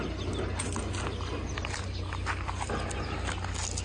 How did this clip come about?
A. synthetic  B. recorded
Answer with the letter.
B